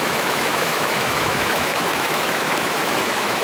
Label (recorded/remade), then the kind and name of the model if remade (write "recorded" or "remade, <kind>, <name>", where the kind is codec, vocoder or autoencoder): remade, autoencoder, DAC-VAE